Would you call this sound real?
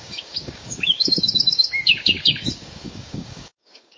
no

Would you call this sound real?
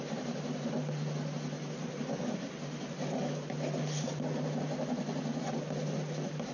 yes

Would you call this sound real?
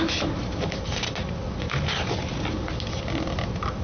yes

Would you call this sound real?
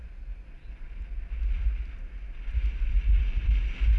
yes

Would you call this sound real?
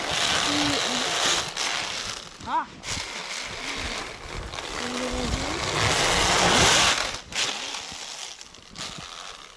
yes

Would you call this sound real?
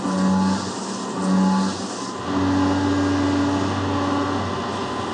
yes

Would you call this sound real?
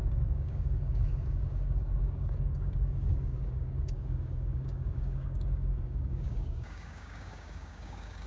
no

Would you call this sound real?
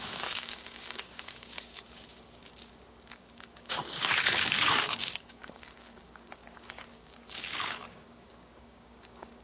no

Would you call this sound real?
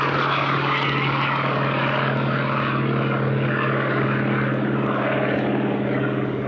no